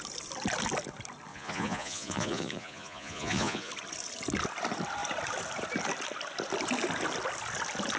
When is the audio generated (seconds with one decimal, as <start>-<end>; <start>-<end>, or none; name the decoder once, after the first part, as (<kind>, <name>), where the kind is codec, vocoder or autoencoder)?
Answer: 1.3-3.7 (vocoder, Vocos)

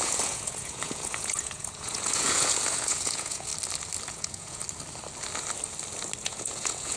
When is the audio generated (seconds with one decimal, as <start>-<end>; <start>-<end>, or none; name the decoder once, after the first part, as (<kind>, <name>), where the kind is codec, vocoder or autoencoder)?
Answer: 0.0-3.5 (vocoder, Vocos); 4.1-4.6; 6.2-7.0

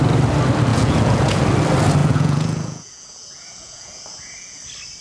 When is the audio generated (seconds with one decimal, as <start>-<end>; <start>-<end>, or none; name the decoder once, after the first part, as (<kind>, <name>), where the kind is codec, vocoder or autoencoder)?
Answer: 0.7-1.4 (vocoder, Vocos); 2.0-4.6

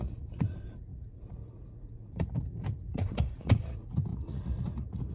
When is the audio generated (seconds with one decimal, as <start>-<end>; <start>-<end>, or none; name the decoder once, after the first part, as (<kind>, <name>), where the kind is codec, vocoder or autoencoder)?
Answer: 0.0-5.1 (vocoder, Vocos)